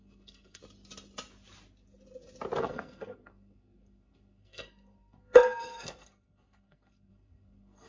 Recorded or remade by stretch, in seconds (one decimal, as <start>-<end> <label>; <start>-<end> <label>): 0.0-0.6 remade; 0.6-2.6 recorded; 2.6-7.9 remade